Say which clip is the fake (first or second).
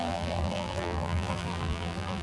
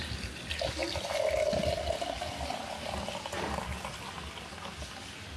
first